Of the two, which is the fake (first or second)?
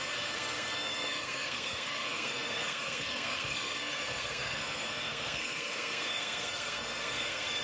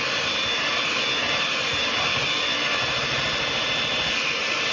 first